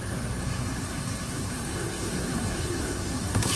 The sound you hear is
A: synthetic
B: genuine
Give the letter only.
A